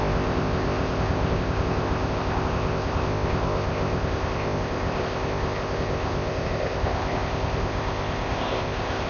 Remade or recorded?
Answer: remade